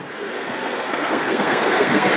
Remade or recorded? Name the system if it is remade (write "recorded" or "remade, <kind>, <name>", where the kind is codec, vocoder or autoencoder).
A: remade, codec, SNAC